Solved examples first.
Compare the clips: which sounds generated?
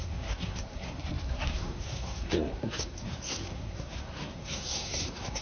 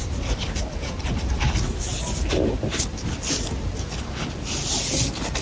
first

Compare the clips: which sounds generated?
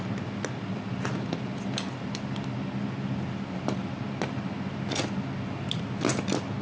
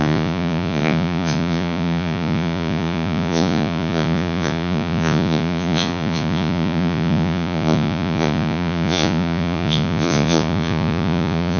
second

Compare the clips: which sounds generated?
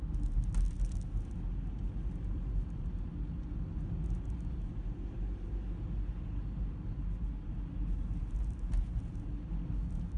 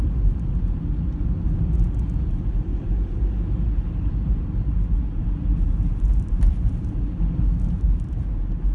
second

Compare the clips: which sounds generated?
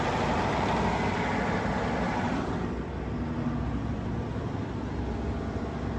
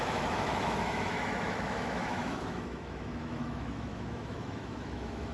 second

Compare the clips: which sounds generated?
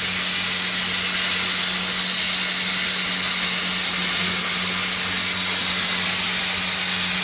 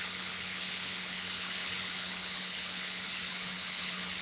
second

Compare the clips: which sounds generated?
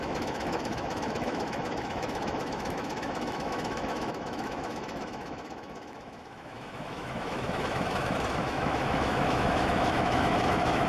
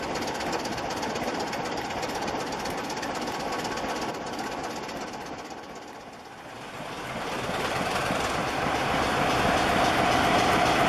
first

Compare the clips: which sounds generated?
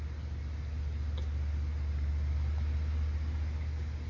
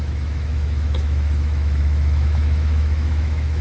second